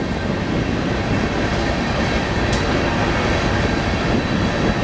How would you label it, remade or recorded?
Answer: recorded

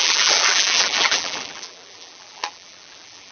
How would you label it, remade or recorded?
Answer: remade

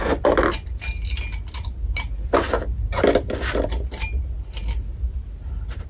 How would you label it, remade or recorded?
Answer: recorded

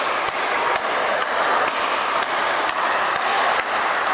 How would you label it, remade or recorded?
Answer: recorded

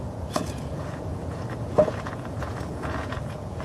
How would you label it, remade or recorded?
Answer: remade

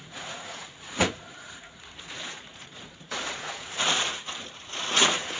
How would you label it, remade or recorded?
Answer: remade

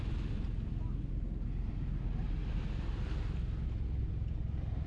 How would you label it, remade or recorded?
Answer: recorded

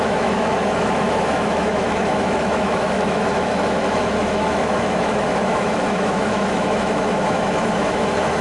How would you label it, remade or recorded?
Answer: remade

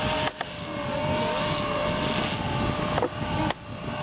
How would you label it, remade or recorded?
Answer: recorded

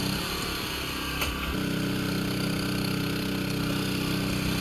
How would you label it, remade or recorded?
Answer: recorded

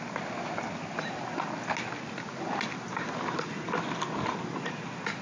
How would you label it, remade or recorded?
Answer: recorded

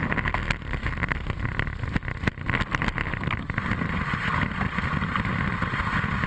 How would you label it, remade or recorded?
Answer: recorded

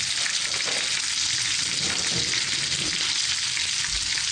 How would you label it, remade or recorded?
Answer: recorded